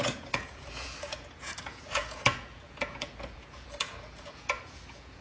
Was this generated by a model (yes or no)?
yes